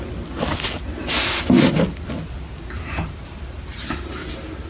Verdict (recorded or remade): recorded